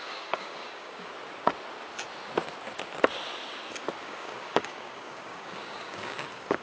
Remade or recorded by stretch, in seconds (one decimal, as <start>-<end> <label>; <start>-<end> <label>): 0.0-1.1 remade; 1.1-4.0 recorded; 4.0-6.6 remade